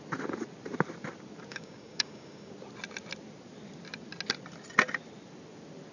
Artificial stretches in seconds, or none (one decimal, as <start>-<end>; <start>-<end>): 1.5-2.5